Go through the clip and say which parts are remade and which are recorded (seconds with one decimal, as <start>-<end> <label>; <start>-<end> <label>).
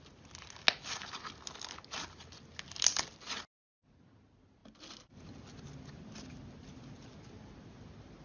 0.0-8.2 recorded